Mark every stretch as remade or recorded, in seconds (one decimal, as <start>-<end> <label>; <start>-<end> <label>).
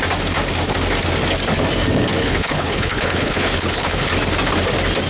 0.0-2.2 recorded; 2.2-4.1 remade; 4.1-5.1 recorded